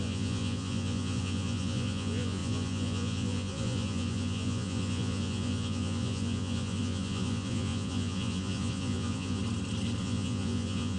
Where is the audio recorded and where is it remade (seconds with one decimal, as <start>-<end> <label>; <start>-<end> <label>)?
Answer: 0.0-9.4 remade; 9.4-10.0 recorded; 10.0-11.0 remade